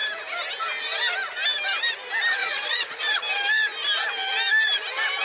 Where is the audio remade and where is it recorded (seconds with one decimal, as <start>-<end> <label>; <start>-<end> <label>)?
0.0-2.4 recorded; 2.4-3.0 remade; 3.0-5.2 recorded